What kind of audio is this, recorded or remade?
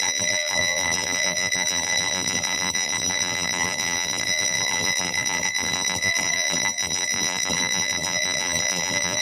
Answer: remade